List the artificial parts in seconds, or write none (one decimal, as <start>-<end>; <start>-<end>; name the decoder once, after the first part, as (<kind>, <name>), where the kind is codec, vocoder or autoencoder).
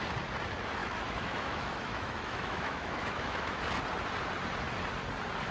0.8-3.6 (autoencoder, DAC-VAE)